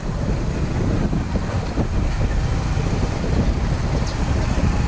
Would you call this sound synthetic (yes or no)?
no